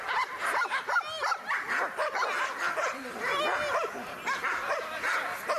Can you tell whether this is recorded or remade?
recorded